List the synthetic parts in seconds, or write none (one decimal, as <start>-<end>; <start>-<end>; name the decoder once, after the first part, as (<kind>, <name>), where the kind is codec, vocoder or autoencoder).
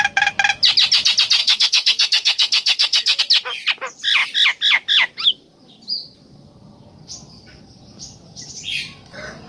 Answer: 1.4-3.2 (codec, SNAC)